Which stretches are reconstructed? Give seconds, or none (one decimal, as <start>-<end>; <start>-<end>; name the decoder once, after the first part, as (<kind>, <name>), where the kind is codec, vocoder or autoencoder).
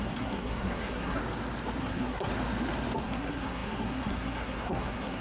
0.0-1.2 (codec, SNAC); 1.8-2.3; 3.0-5.2